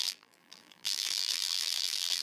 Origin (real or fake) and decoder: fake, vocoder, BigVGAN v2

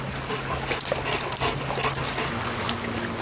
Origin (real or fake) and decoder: real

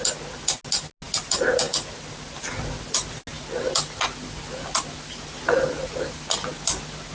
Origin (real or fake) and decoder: real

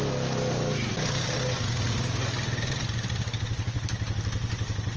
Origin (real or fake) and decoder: real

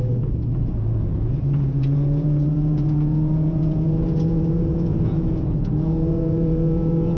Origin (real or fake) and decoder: fake, vocoder, Vocos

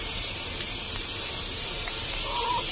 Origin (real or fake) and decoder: fake, vocoder, BigVGAN v2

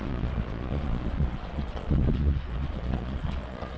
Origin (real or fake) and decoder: fake, vocoder, Vocos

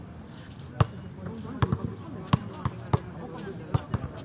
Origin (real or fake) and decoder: real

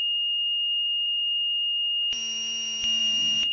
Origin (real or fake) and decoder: fake, vocoder, BigVGAN v2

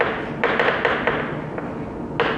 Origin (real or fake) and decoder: real